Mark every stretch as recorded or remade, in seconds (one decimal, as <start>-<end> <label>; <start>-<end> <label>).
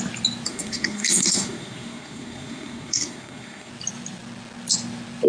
0.0-0.5 recorded; 0.5-3.7 remade; 3.7-5.3 recorded